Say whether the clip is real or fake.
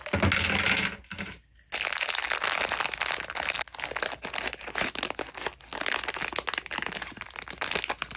real